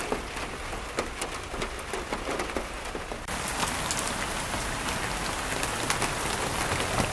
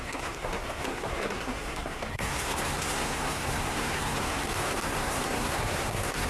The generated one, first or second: second